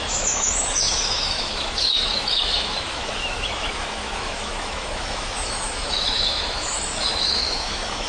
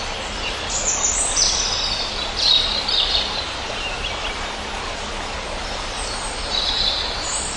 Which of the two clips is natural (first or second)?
second